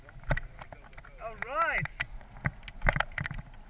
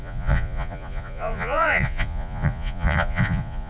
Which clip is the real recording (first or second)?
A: first